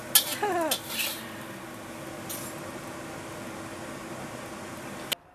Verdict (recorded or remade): recorded